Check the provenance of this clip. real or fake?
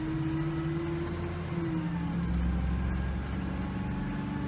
real